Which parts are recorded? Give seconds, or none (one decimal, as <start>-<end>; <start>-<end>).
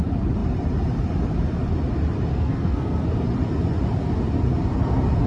0.0-2.3; 3.1-5.3